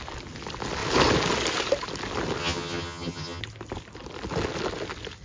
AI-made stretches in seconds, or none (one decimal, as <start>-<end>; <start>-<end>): 2.4-3.4